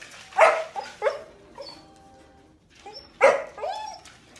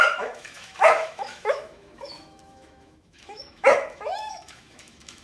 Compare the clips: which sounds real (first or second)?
first